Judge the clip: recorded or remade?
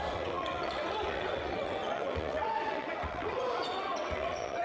remade